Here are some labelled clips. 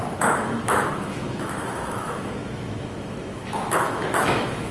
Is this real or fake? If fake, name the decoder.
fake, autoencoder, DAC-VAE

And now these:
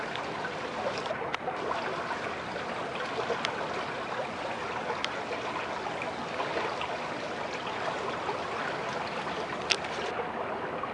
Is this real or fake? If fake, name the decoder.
real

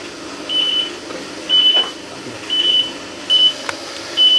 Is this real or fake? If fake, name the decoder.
real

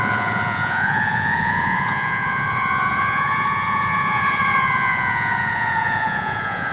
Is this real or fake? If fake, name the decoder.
fake, vocoder, Vocos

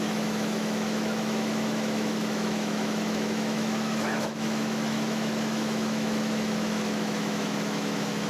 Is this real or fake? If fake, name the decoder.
fake, autoencoder, DAC-VAE